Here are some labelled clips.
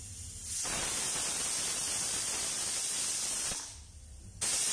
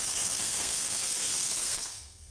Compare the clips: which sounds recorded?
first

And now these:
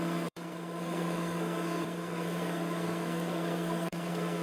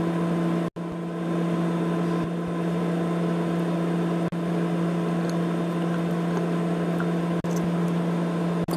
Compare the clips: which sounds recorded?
second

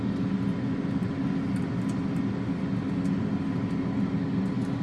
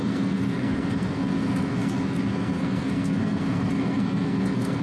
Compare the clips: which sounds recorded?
first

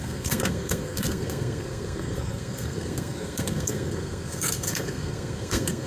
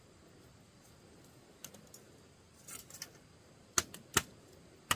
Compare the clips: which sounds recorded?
second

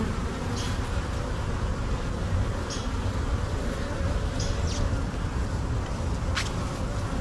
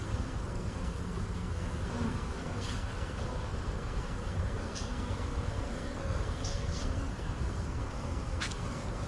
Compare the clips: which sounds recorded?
first